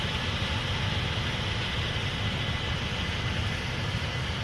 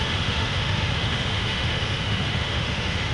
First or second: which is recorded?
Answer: first